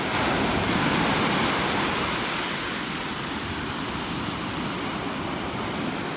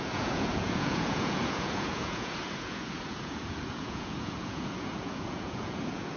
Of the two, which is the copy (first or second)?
second